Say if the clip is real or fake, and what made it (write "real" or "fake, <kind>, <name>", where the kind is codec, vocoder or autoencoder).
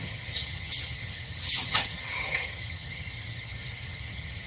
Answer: fake, vocoder, HiFi-GAN